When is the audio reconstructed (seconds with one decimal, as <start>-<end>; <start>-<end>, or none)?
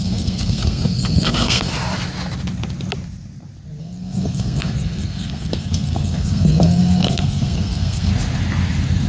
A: 0.0-1.7; 3.8-8.1